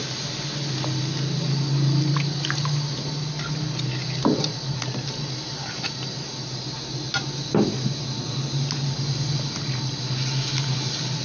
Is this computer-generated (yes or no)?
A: no